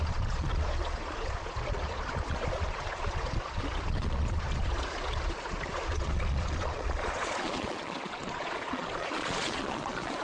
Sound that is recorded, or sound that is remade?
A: remade